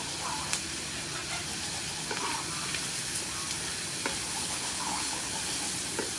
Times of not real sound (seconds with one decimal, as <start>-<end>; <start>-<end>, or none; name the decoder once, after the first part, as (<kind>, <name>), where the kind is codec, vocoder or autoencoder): 4.4-5.3 (codec, HILCodec)